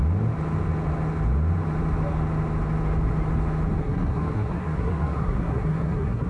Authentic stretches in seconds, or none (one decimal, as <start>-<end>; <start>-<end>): 0.0-3.8